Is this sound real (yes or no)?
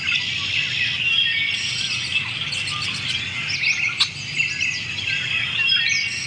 yes